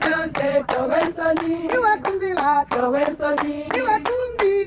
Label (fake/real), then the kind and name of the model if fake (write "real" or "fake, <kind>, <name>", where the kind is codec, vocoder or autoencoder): fake, vocoder, Vocos